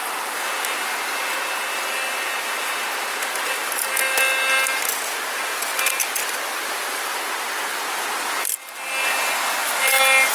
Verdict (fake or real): real